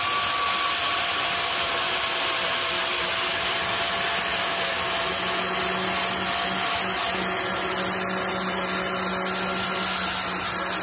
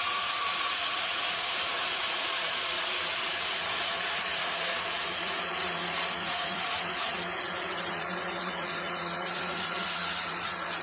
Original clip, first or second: first